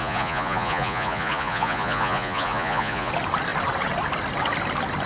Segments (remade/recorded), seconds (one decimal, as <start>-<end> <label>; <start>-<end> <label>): 0.0-3.1 remade; 3.1-5.1 recorded